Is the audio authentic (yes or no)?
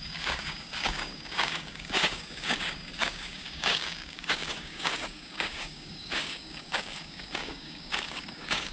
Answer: no